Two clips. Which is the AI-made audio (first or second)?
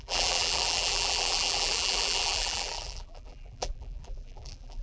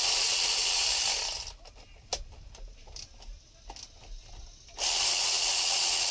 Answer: first